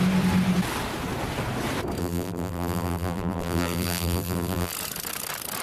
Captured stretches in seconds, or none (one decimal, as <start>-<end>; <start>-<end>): 0.0-2.0; 4.7-5.6